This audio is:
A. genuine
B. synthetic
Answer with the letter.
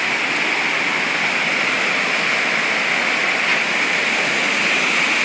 A